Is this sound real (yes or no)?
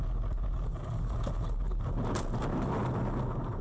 yes